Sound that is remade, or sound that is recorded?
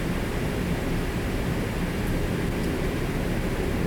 recorded